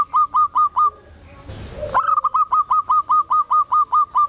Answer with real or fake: real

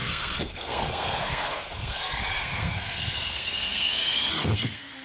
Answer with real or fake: fake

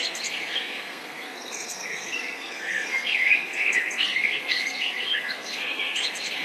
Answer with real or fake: fake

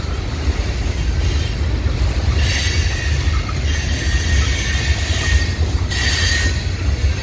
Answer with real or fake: real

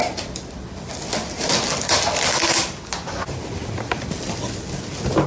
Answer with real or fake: real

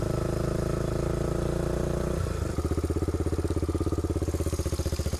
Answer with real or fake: real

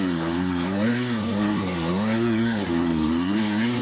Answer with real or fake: fake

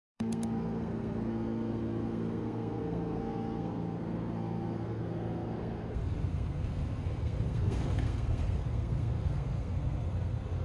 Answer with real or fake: fake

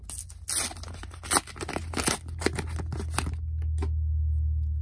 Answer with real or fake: real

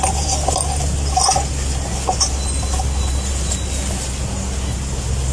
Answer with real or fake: real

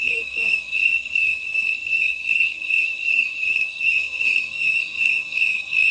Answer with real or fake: fake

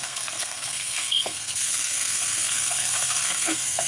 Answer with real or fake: fake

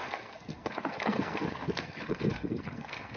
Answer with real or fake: fake